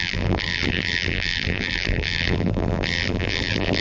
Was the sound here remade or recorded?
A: remade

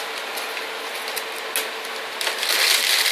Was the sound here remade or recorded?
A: recorded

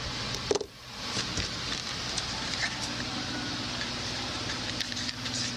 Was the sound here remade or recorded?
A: recorded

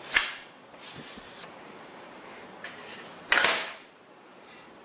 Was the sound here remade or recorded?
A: remade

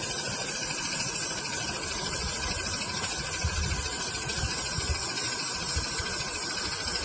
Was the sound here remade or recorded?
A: remade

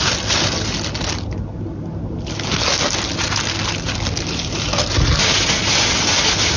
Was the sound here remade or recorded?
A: recorded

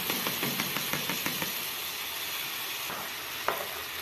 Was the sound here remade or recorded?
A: recorded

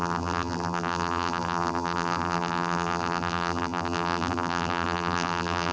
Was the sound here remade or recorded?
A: remade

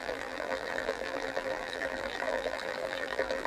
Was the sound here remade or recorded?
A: remade